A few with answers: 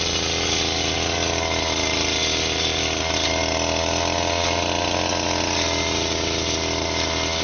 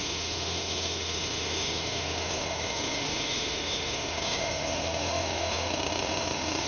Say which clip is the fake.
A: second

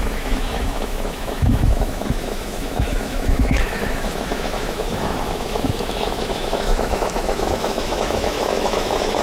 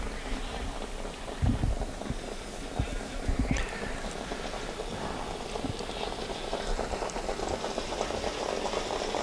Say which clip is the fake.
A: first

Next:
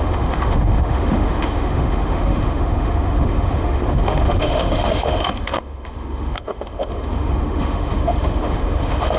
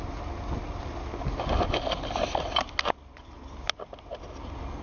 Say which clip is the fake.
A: first